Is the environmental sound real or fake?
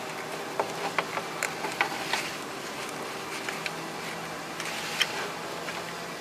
real